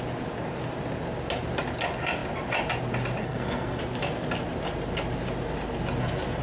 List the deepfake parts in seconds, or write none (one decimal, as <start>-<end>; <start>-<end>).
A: 3.2-3.8